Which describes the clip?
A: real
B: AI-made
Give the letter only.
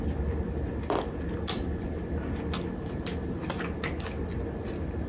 A